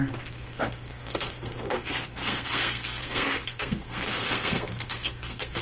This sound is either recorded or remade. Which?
remade